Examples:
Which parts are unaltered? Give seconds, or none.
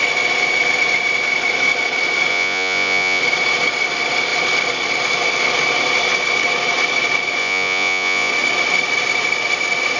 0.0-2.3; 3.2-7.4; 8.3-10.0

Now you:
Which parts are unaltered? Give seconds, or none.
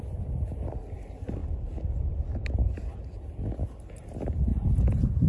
0.0-4.5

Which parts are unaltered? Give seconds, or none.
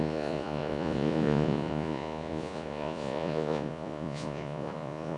none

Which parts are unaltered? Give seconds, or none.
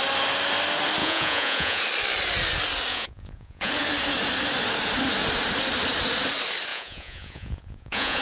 0.0-1.0; 1.8-2.9; 3.7-6.7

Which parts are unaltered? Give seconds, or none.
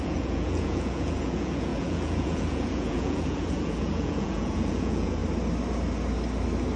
5.2-6.8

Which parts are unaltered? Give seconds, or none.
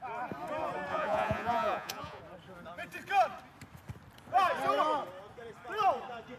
0.0-0.9; 2.2-6.4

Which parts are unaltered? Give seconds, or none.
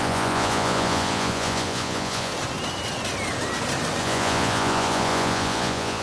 2.3-4.0